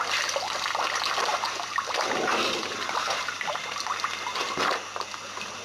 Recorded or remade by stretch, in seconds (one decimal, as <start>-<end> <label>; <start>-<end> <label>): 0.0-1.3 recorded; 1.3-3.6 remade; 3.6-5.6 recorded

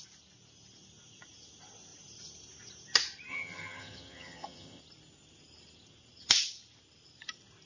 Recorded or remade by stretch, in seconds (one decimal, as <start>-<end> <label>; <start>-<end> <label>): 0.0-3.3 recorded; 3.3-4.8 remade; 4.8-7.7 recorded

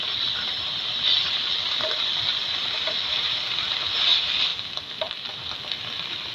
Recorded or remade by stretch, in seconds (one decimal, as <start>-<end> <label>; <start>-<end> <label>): 0.0-2.4 recorded; 2.4-3.3 remade; 3.3-4.5 recorded; 4.5-5.5 remade; 5.5-6.3 recorded